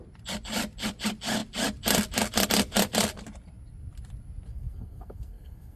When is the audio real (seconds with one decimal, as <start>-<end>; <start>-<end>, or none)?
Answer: 0.0-4.5